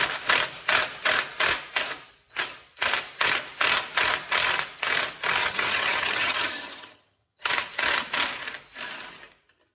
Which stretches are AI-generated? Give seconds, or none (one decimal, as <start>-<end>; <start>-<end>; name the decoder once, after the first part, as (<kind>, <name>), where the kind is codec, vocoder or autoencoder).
5.4-7.5 (vocoder, HiFi-GAN)